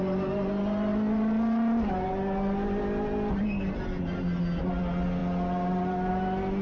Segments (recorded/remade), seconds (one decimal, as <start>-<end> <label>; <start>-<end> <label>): 0.0-6.6 recorded